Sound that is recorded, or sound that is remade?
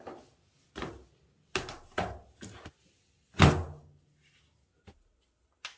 recorded